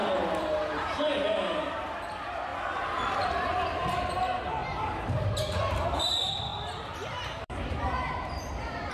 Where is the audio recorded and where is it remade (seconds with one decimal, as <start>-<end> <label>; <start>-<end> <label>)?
0.0-2.5 remade; 2.5-3.3 recorded; 3.3-4.6 remade; 4.6-5.6 recorded; 5.6-6.5 remade; 6.5-7.3 recorded; 7.3-8.9 remade